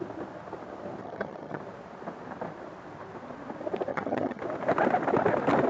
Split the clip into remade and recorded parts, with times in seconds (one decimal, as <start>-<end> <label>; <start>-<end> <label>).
0.0-1.0 recorded; 1.0-1.6 remade; 1.6-3.9 recorded; 3.9-4.4 remade; 4.4-5.7 recorded